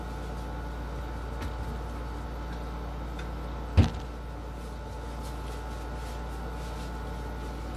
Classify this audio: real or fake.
real